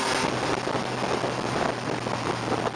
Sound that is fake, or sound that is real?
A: real